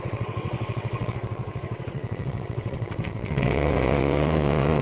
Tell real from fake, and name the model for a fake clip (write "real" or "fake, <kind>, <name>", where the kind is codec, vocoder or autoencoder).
fake, vocoder, WaveNeXt